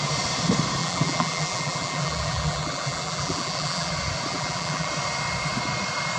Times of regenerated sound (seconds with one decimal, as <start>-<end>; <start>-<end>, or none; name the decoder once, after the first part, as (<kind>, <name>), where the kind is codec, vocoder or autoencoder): 0.8-3.9 (vocoder, BigVGAN v2); 4.3-4.9